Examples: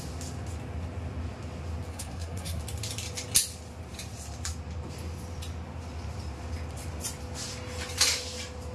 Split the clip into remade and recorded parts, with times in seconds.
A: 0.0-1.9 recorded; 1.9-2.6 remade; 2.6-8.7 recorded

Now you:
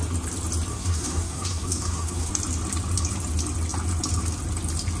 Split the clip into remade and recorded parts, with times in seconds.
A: 0.0-0.7 recorded; 0.7-2.3 remade; 2.3-5.0 recorded

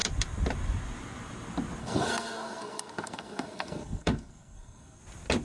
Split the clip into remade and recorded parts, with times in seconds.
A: 0.0-1.8 recorded; 1.8-5.0 remade; 5.0-5.4 recorded

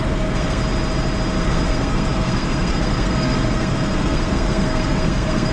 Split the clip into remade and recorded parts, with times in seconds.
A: 0.0-0.6 remade; 0.6-1.4 recorded; 1.4-5.5 remade

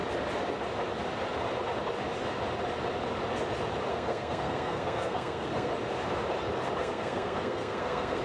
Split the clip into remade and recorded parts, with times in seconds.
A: 0.0-3.9 recorded; 3.9-5.7 remade; 5.7-6.8 recorded; 6.8-8.2 remade

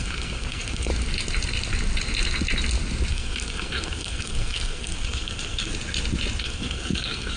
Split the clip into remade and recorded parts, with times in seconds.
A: 0.0-0.9 remade; 0.9-3.1 recorded; 3.1-5.7 remade; 5.7-6.4 recorded; 6.4-7.4 remade